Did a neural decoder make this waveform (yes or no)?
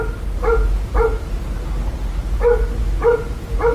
no